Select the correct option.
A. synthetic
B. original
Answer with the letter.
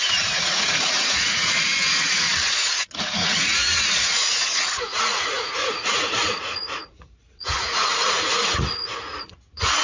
A